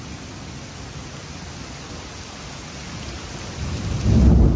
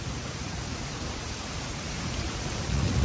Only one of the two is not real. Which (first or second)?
second